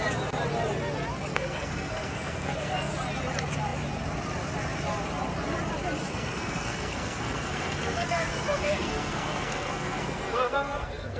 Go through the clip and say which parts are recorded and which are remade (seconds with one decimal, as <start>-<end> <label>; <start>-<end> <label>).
0.0-1.3 recorded; 1.3-2.9 remade; 2.9-6.0 recorded; 6.0-11.2 remade